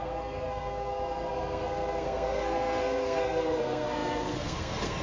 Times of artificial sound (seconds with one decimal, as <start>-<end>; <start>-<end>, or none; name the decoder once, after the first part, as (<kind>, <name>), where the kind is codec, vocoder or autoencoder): 0.0-5.0 (codec, SNAC)